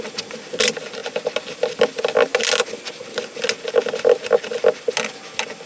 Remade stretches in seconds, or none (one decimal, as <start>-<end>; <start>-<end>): none